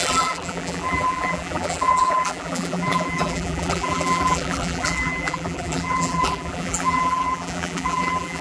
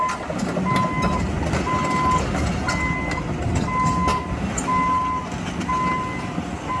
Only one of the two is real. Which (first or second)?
second